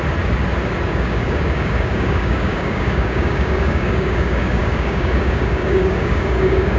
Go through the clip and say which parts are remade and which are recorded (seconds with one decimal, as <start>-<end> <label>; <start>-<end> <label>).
0.0-0.9 recorded; 0.9-6.8 remade